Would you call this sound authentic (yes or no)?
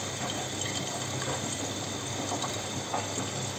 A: no